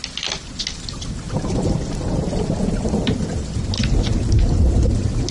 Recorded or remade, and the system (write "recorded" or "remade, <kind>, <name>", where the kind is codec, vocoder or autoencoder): recorded